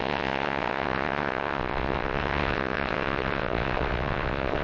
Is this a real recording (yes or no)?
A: no